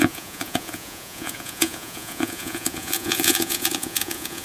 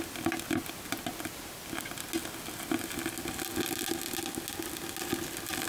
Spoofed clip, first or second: first